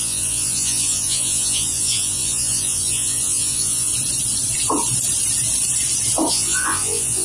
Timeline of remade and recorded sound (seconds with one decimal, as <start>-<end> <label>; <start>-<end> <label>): 0.0-3.9 remade; 3.9-6.3 recorded; 6.3-7.2 remade